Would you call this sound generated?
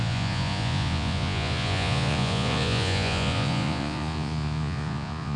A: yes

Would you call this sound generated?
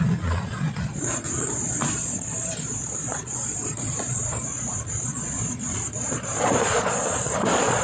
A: yes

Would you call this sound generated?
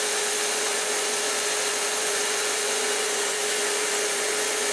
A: yes